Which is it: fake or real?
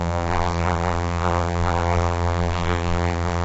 fake